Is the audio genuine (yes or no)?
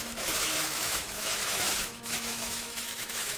no